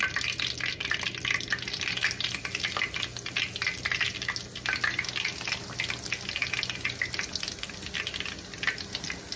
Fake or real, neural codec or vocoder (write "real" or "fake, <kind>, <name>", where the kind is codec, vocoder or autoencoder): real